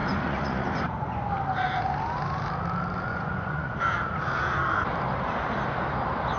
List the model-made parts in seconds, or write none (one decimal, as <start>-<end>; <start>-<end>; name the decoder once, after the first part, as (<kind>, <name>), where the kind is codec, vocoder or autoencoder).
0.0-1.3 (vocoder, Vocos); 3.1-3.8